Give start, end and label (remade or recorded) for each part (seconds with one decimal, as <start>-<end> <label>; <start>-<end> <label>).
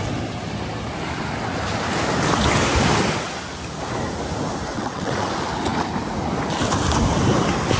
0.0-4.7 recorded; 4.7-5.3 remade; 5.3-7.8 recorded